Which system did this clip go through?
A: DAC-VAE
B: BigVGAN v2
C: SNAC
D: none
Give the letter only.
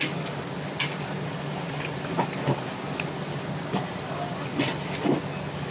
D